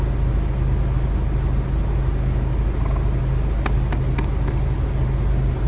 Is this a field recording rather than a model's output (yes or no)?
yes